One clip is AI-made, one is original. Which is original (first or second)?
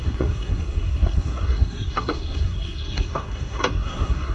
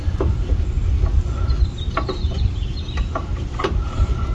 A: second